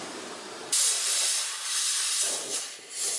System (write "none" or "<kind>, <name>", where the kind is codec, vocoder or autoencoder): vocoder, BigVGAN v2